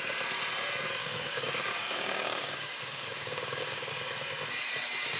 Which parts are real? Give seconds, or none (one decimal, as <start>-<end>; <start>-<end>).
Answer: 0.0-1.0; 3.9-5.2